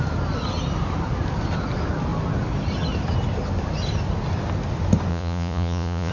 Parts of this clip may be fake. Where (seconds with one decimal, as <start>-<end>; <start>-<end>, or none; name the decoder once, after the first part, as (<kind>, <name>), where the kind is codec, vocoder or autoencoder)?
5.1-6.1 (vocoder, Vocos)